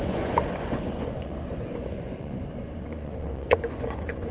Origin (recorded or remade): remade